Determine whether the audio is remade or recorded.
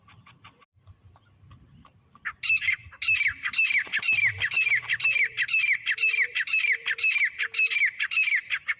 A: recorded